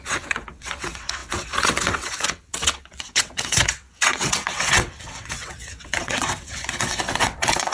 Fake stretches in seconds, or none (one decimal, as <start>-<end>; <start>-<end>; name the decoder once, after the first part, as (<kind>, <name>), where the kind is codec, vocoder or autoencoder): 0.0-7.7 (vocoder, WaveNeXt)